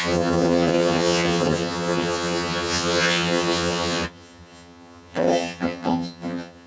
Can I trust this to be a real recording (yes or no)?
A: no